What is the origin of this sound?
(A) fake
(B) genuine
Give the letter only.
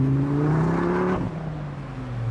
B